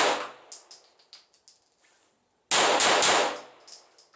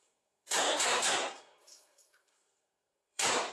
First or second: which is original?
first